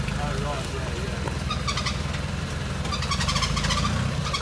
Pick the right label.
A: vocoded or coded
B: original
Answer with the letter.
B